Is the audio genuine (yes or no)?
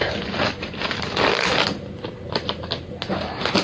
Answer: yes